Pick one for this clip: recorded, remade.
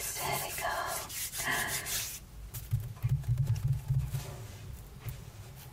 recorded